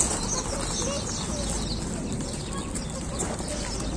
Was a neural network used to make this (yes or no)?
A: no